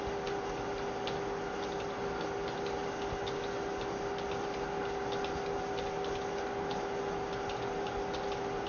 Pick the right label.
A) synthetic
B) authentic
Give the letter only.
B